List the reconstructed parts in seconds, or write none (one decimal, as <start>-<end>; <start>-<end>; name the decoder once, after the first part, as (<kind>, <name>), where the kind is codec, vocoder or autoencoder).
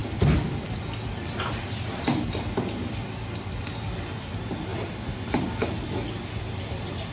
0.0-2.3 (vocoder, BigVGAN v2); 4.7-7.1